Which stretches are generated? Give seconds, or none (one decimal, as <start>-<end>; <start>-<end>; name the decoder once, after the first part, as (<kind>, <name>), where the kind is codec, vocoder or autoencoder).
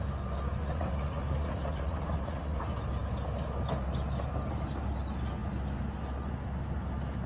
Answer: 0.6-2.6 (vocoder, Vocos)